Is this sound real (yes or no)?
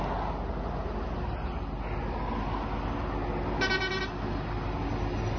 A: yes